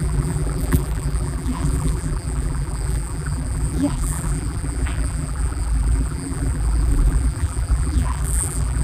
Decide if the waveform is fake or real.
fake